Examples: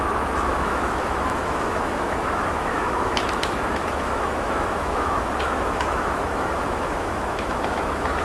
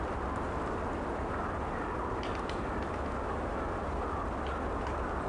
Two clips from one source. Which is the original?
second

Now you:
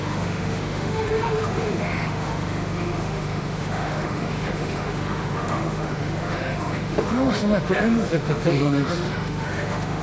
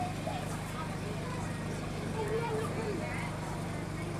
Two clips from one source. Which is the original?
second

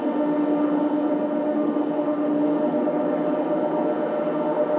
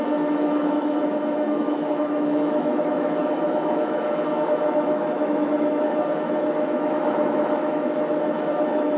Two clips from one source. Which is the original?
first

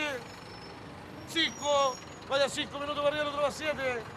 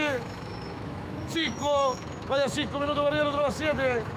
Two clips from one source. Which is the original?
first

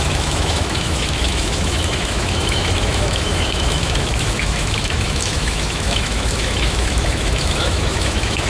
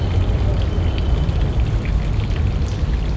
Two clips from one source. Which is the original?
second